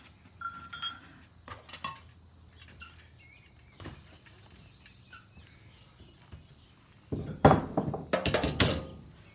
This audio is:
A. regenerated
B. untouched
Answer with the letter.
B